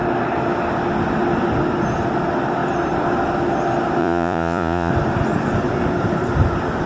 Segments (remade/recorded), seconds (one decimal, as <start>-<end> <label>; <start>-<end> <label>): 0.0-4.0 recorded; 4.0-4.9 remade; 4.9-6.9 recorded